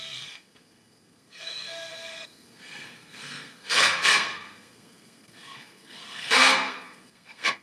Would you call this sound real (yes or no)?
no